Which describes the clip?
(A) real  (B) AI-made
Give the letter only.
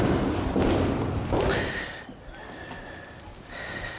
B